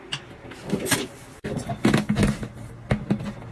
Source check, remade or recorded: recorded